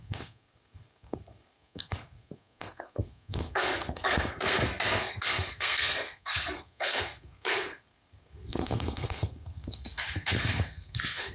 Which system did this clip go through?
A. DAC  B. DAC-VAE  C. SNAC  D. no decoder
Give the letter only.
C